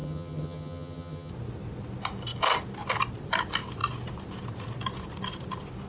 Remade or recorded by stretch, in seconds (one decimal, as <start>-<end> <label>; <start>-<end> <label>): 0.0-1.3 remade; 1.3-5.9 recorded